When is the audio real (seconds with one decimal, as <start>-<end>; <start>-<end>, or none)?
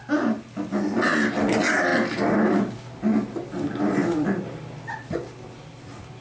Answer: 0.0-6.2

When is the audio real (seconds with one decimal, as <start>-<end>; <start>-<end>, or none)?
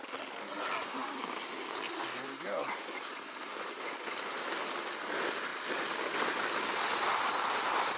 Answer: 0.0-8.0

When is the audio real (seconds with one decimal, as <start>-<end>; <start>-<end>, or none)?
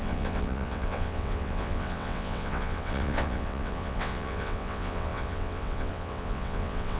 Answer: none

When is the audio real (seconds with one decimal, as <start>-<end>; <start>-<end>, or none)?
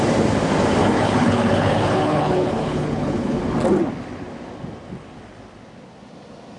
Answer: 0.0-0.8; 3.4-6.6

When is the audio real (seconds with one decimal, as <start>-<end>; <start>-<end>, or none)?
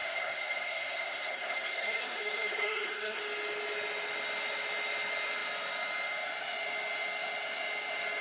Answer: 3.2-8.2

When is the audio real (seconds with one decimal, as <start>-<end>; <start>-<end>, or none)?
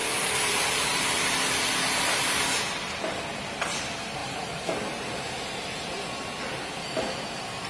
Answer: 0.0-4.2; 6.1-7.7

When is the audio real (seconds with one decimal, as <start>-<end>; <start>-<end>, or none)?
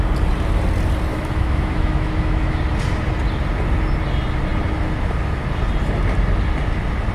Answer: 0.0-1.1; 2.6-7.1